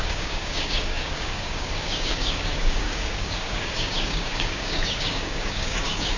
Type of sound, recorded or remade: remade